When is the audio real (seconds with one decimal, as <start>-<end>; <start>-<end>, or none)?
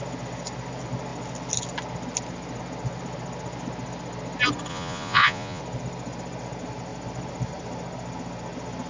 0.0-4.7; 5.6-8.9